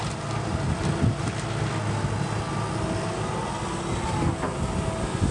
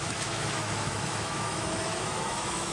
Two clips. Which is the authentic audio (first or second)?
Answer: first